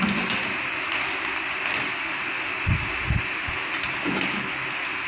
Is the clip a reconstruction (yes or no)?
no